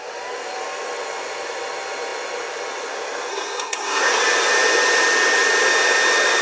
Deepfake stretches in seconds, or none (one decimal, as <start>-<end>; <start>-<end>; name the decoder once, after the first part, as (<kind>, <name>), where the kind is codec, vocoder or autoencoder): 3.3-4.2 (codec, SNAC)